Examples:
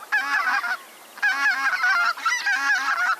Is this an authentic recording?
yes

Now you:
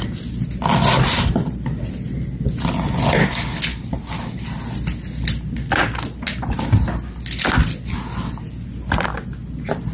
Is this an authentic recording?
yes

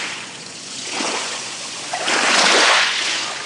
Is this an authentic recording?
no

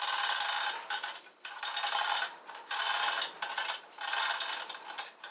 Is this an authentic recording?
yes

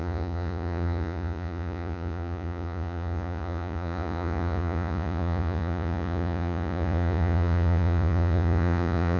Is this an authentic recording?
no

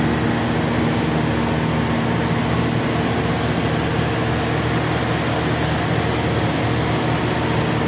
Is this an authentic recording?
yes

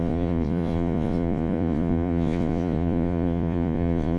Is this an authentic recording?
no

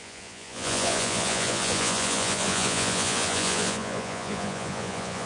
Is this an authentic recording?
no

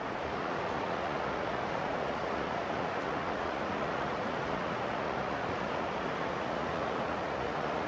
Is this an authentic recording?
no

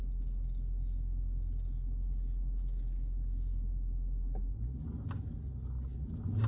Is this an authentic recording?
yes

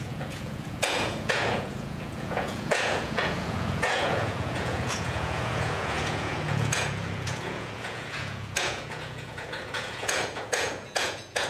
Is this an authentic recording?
no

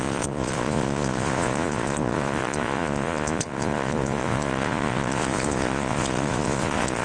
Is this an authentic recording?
no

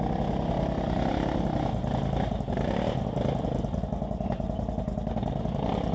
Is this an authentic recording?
yes